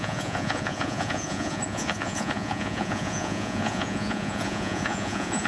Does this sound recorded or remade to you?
remade